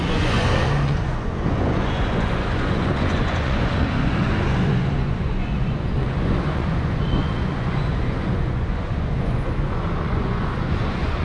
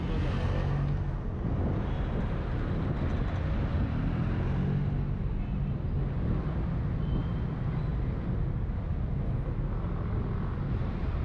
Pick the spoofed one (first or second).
first